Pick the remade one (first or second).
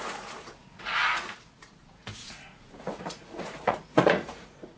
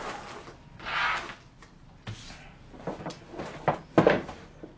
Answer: first